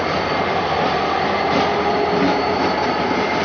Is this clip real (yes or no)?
yes